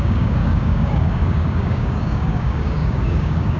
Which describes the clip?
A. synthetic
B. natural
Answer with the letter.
A